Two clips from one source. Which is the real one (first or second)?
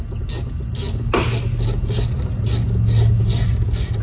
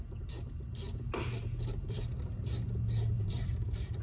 first